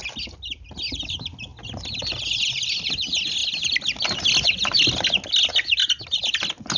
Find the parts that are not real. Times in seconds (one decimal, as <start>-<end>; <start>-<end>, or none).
none